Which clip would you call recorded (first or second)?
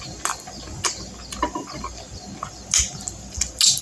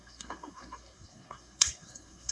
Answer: first